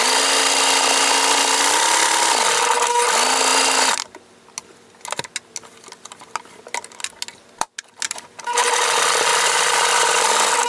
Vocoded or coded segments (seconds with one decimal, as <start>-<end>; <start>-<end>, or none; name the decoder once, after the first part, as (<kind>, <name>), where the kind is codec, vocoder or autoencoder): 9.3-10.2 (vocoder, BigVGAN v2)